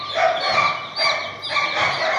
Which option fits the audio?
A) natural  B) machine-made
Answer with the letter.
A